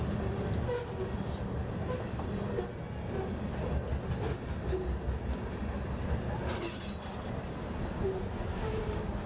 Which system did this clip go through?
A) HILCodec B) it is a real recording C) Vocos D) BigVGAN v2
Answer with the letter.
B